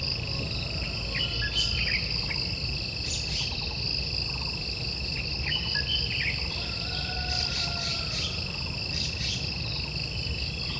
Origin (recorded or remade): recorded